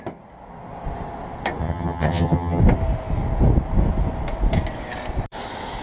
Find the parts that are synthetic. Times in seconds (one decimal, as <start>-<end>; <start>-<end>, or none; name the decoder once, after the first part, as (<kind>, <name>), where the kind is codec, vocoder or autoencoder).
1.6-2.6 (vocoder, HiFi-GAN)